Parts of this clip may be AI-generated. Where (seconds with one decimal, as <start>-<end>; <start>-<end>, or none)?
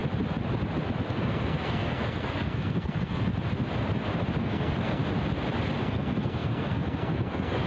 1.1-3.3; 4.4-5.0; 5.8-7.7